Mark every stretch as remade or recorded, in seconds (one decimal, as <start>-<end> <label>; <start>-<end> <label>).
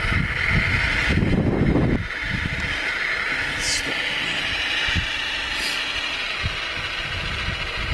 0.0-7.9 recorded